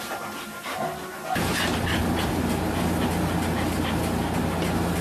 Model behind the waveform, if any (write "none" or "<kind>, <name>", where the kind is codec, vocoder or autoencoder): none